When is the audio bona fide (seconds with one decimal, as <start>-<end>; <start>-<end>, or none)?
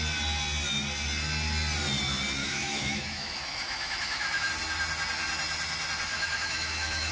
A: 0.0-2.4; 4.5-6.1